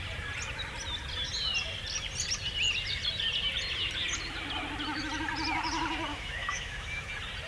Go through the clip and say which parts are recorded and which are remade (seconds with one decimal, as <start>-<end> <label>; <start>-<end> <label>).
0.0-6.1 recorded; 6.1-7.1 remade; 7.1-7.5 recorded